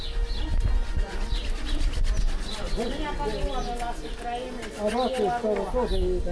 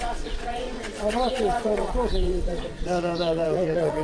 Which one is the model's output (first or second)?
second